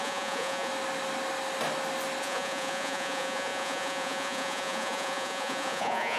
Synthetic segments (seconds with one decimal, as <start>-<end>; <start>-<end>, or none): 0.0-0.7; 2.2-6.2